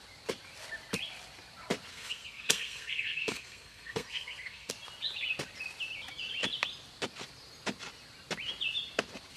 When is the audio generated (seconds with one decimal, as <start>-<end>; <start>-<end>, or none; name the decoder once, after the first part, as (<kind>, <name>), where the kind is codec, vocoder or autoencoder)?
1.9-4.7 (codec, SNAC)